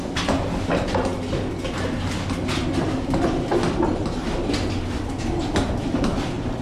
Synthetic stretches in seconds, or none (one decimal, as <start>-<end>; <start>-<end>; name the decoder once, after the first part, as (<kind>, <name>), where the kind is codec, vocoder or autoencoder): none

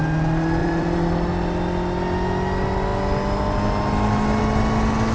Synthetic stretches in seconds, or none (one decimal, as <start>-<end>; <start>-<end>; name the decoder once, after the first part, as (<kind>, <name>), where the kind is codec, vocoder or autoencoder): 0.6-1.3 (vocoder, BigVGAN v2)

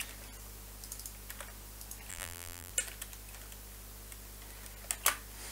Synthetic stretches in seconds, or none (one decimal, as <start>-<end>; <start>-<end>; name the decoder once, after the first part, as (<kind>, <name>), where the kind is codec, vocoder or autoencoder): 2.1-2.7 (vocoder, BigVGAN v2)

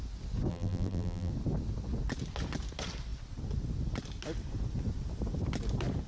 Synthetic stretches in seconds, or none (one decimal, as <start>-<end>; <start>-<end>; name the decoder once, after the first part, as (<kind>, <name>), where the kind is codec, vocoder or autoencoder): 0.5-1.3 (vocoder, BigVGAN v2)

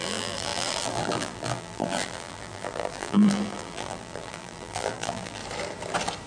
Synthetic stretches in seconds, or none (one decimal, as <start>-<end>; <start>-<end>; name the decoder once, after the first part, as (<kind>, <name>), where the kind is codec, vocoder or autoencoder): 0.0-5.4 (vocoder, BigVGAN v2)